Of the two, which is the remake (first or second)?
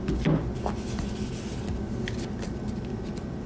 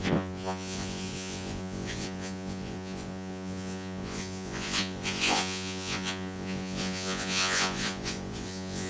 second